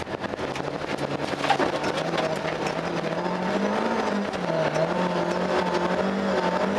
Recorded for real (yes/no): yes